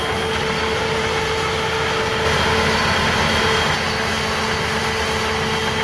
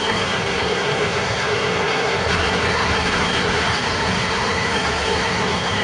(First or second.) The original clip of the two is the first